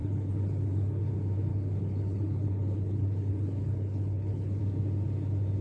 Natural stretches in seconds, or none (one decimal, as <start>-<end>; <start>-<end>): 1.1-1.5; 4.6-5.6